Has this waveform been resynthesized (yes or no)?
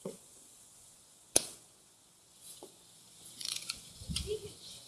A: yes